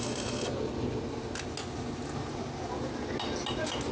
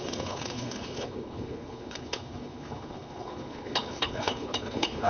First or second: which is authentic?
first